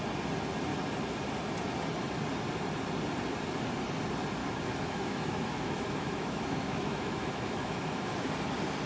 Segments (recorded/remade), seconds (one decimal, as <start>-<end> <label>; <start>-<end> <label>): 0.0-4.4 recorded; 4.4-8.3 remade; 8.3-8.9 recorded